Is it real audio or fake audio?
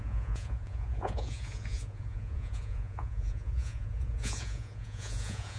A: fake